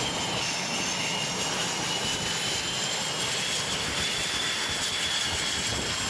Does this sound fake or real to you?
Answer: real